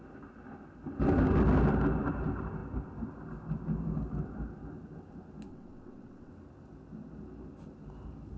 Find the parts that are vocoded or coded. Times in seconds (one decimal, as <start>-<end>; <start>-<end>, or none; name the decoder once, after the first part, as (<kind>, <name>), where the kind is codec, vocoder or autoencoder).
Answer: 5.5-6.3 (vocoder, WaveNeXt)